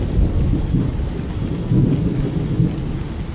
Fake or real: real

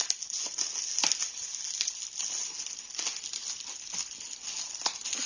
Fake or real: real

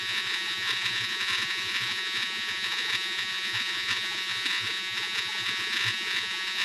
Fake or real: fake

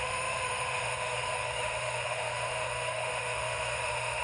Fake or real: fake